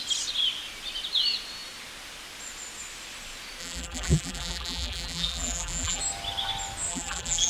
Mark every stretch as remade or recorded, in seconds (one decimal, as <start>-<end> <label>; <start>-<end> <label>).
0.0-3.6 recorded; 3.6-6.0 remade; 6.0-6.9 recorded; 6.9-7.5 remade